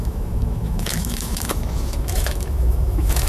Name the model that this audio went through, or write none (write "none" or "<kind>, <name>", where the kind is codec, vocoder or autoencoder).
autoencoder, DAC-VAE